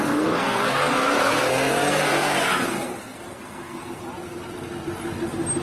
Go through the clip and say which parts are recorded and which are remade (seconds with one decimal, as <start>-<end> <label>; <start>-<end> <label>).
0.0-4.0 remade; 4.0-5.6 recorded